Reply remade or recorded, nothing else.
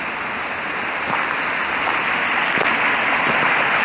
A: recorded